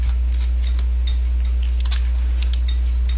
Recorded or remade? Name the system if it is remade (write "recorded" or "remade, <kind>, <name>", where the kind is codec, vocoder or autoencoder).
recorded